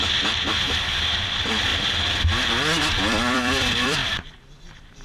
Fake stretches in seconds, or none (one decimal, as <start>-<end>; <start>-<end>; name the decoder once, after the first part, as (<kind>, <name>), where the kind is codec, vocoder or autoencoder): 0.0-1.7 (vocoder, BigVGAN v2); 2.9-5.0